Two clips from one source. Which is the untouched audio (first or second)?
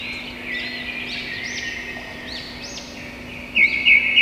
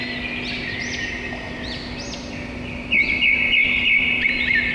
first